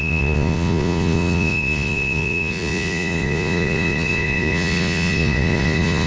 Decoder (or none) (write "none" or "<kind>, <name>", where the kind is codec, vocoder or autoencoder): vocoder, Vocos